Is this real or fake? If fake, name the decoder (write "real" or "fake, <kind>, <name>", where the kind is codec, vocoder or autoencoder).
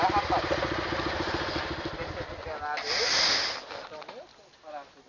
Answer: real